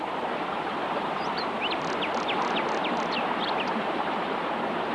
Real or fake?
fake